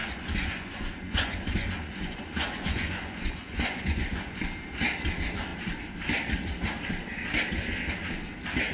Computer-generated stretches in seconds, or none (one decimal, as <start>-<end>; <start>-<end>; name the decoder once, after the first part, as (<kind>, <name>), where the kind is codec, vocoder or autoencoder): 0.0-4.4 (vocoder, Vocos)